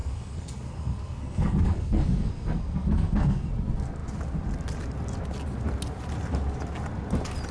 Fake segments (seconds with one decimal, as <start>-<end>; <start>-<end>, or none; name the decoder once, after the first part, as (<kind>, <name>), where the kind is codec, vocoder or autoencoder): 0.0-3.5 (codec, SNAC)